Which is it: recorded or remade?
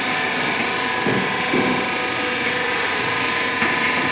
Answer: recorded